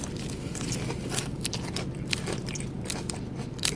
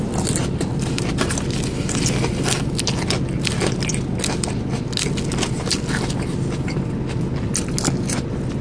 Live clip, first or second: second